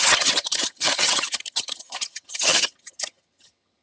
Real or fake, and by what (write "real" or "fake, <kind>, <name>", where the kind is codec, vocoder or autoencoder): fake, vocoder, HiFi-GAN